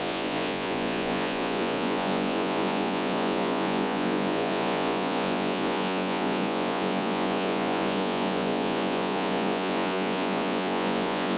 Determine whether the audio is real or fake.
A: fake